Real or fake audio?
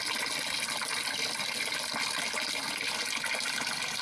real